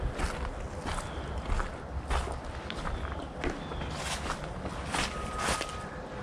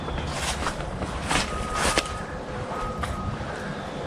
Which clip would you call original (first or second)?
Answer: first